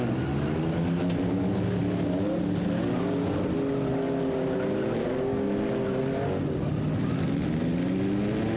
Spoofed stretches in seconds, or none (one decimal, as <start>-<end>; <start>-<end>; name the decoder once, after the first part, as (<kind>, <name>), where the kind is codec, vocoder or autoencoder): none